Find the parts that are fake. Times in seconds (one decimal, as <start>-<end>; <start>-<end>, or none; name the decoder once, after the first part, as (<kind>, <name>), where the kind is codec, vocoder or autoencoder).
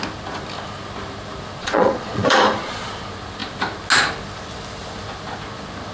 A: 1.6-2.9 (vocoder, Vocos)